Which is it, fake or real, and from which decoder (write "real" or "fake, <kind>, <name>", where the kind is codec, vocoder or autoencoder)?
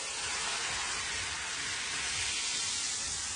real